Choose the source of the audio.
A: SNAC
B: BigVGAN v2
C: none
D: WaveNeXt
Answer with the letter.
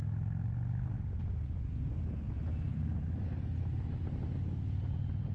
C